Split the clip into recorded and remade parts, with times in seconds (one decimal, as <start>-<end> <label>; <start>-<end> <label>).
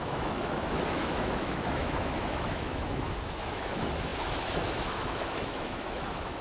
0.0-6.4 remade